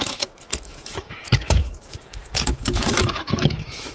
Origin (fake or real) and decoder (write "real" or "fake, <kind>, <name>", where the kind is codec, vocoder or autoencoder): fake, autoencoder, DAC-VAE